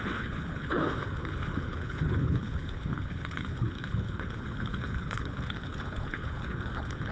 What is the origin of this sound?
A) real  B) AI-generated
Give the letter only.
B